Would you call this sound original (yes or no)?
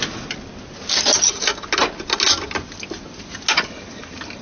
yes